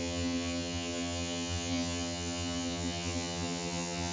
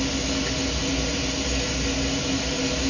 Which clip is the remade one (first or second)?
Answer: first